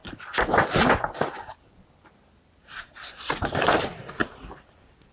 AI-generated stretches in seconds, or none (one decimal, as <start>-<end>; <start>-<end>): 3.1-5.1